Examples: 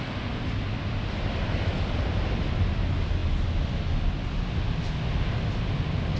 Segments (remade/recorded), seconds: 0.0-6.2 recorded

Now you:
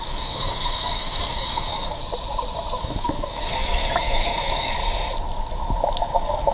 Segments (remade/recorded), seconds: 0.0-2.0 remade; 2.0-2.8 recorded; 2.8-4.8 remade; 4.8-6.0 recorded; 6.0-6.5 remade

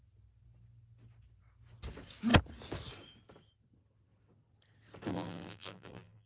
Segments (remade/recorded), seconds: 0.0-5.1 recorded; 5.1-6.3 remade

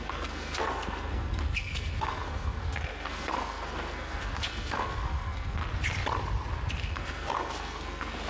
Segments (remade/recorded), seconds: 0.0-5.6 remade; 5.6-6.7 recorded; 6.7-8.3 remade

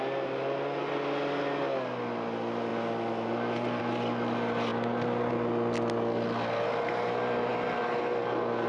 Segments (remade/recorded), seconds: 0.0-8.7 recorded